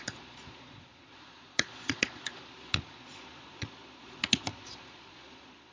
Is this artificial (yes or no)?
yes